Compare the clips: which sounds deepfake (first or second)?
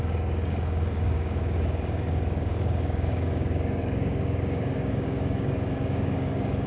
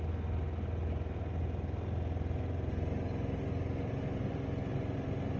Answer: first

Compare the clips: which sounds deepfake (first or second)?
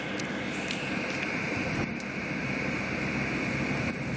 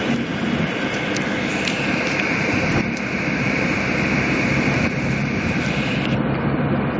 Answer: second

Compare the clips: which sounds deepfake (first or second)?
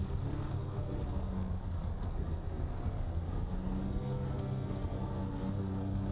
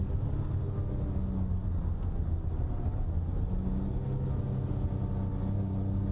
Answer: first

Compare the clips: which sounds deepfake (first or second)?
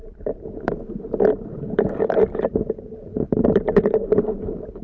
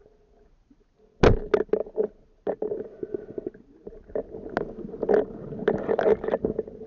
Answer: first